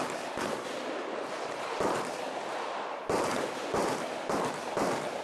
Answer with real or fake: real